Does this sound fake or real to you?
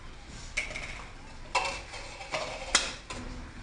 real